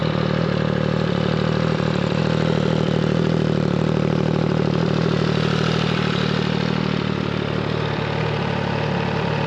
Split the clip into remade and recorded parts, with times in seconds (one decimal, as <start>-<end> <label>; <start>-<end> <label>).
0.0-9.5 recorded